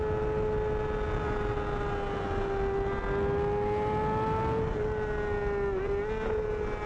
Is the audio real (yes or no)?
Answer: yes